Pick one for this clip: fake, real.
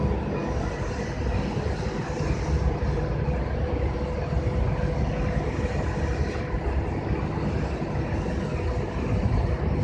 real